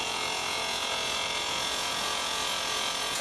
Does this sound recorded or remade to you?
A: remade